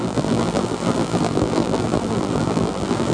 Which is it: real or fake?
fake